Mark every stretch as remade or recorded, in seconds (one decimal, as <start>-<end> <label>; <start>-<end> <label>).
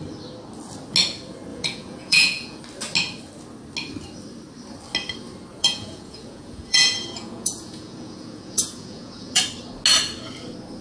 0.0-1.5 recorded; 1.5-2.6 remade; 2.6-5.6 recorded; 5.6-9.4 remade; 9.4-10.8 recorded